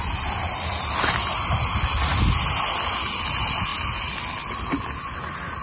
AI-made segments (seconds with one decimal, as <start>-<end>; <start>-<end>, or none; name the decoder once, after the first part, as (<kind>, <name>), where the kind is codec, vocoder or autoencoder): none